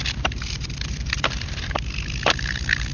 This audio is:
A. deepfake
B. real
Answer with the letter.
A